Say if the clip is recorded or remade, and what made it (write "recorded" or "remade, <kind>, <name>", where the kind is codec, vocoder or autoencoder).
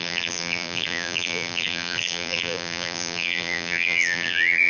remade, vocoder, BigVGAN v2